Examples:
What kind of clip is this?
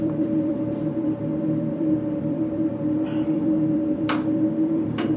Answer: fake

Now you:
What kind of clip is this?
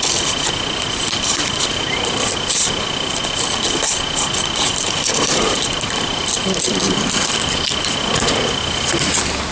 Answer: real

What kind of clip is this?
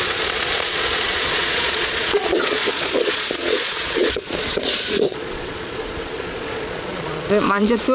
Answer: fake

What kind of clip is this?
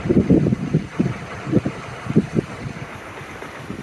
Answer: real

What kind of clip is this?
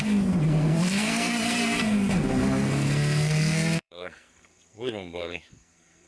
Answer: fake